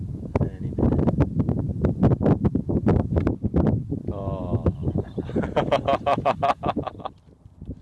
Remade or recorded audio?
recorded